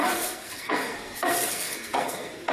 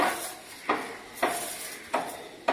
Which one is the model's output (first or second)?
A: first